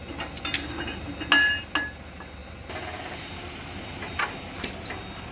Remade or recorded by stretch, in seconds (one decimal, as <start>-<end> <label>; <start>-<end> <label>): 0.0-5.3 recorded